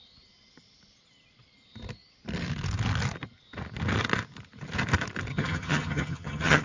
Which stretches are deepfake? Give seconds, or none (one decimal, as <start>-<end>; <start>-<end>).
5.3-6.6